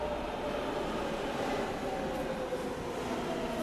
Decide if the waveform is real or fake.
real